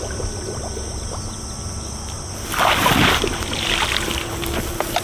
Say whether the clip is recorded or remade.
recorded